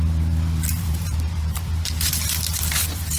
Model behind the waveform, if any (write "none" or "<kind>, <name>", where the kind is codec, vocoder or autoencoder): vocoder, BigVGAN v2